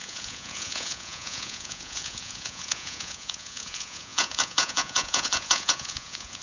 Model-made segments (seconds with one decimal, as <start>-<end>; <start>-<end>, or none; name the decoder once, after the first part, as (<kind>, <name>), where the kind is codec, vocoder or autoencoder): 0.0-6.4 (vocoder, Vocos)